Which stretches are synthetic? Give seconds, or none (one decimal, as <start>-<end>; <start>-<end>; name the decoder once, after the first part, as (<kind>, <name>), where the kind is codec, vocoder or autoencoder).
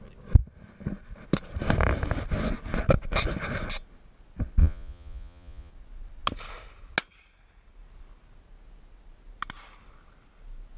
4.6-5.7 (vocoder, Vocos)